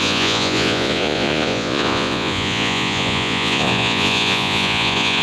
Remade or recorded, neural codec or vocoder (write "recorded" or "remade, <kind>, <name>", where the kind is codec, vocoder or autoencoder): remade, vocoder, Vocos